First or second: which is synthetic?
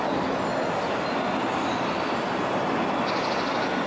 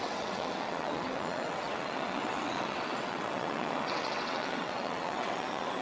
second